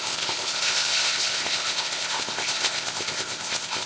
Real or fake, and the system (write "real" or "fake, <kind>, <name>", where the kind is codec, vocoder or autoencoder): fake, codec, ZipCodec